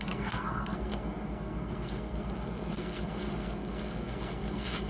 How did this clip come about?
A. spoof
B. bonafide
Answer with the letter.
A